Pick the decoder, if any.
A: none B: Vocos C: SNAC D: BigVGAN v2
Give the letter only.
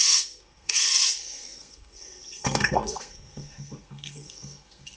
C